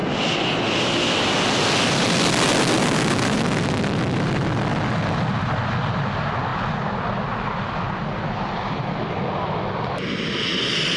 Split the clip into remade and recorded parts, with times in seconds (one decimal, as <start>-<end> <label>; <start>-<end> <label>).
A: 0.0-11.0 recorded